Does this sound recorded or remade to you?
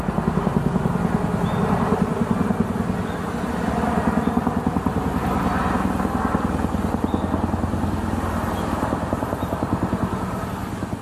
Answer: recorded